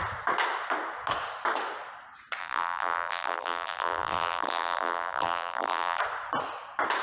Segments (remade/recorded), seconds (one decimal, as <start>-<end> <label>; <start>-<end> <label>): 0.0-2.4 recorded; 2.4-6.0 remade; 6.0-7.0 recorded